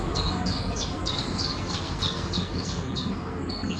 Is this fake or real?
fake